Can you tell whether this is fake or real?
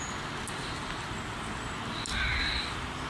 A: real